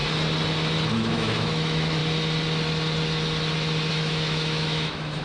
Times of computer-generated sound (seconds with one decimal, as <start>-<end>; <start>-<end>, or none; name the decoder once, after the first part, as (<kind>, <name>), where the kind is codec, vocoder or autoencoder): 0.9-2.0 (autoencoder, DAC-VAE); 3.9-5.2